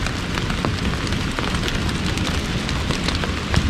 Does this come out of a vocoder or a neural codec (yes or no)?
no